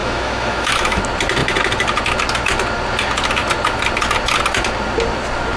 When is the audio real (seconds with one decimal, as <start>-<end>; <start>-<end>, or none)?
1.0-5.6